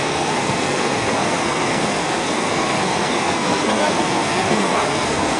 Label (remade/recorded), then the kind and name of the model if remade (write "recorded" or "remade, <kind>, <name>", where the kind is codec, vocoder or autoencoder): remade, codec, SNAC